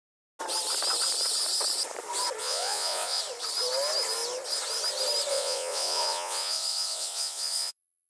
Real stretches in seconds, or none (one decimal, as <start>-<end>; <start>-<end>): 0.0-2.4; 3.2-5.3